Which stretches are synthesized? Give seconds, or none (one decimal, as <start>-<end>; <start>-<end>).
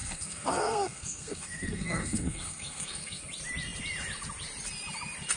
0.0-3.2